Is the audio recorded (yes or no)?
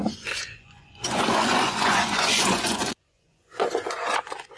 no